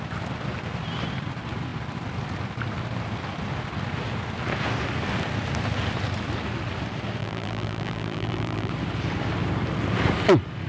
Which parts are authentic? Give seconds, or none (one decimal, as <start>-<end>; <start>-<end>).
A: 0.0-7.2; 8.7-10.7